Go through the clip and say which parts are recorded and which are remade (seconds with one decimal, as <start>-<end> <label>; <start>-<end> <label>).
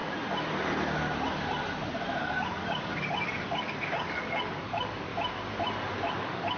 0.0-2.2 recorded; 2.2-5.1 remade; 5.1-6.1 recorded; 6.1-6.6 remade